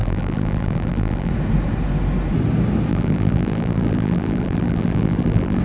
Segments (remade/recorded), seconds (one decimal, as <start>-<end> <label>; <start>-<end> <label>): 0.0-1.3 remade; 1.3-2.9 recorded; 2.9-5.6 remade